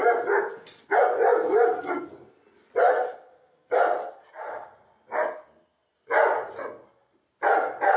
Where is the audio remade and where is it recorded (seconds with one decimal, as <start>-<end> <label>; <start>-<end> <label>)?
0.0-8.0 recorded

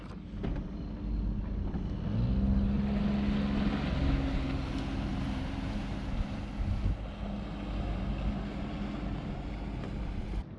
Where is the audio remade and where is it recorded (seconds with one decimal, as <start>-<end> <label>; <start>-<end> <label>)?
0.0-5.1 recorded; 5.1-6.4 remade; 6.4-10.6 recorded

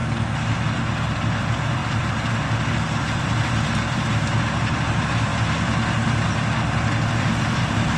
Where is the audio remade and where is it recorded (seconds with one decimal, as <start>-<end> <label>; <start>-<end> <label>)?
0.0-1.4 recorded; 1.4-5.3 remade; 5.3-7.1 recorded; 7.1-8.0 remade

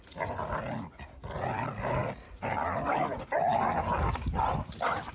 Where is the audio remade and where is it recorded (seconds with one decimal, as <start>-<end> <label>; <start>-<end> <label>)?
0.0-5.1 recorded

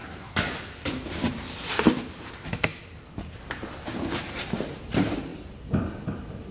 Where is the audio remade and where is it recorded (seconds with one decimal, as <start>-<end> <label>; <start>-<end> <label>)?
0.0-2.3 recorded; 2.3-2.7 remade; 2.7-4.1 recorded; 4.1-5.3 remade; 5.3-6.5 recorded

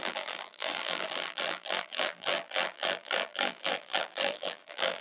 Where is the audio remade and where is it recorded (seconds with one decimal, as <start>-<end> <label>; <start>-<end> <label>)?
0.0-5.0 remade